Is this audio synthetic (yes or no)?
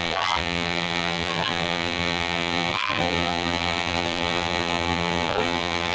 yes